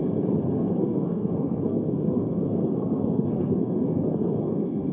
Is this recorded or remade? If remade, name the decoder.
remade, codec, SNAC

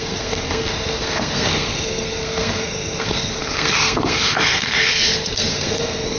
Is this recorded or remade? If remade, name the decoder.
remade, codec, SNAC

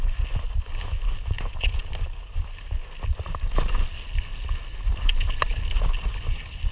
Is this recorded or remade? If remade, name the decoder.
recorded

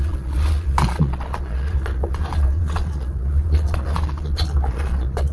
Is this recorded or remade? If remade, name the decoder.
remade, vocoder, Vocos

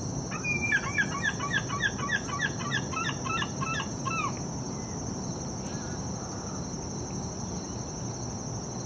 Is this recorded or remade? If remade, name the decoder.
recorded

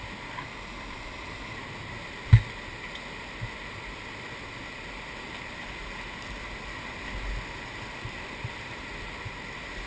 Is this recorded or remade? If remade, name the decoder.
recorded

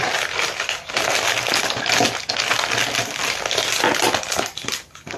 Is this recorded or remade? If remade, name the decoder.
recorded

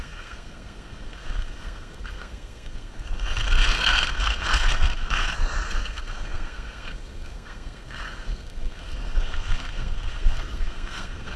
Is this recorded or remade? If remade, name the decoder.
remade, codec, SNAC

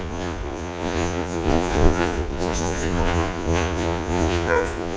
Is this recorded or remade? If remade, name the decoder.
remade, vocoder, Vocos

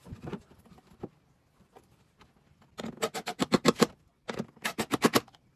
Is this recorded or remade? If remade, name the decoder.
recorded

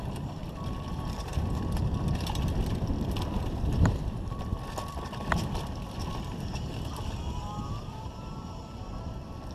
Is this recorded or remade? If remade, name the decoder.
remade, vocoder, BigVGAN v2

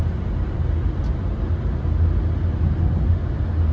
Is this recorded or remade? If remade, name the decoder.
recorded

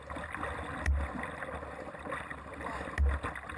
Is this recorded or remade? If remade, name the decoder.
recorded